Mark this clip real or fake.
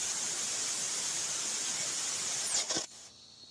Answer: real